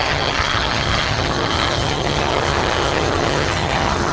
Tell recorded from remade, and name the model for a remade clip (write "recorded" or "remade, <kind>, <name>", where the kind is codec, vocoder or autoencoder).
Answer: remade, vocoder, HiFi-GAN